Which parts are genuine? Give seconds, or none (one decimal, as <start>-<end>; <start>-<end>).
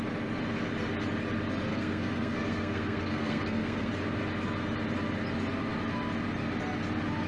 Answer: 0.0-1.7; 3.9-7.3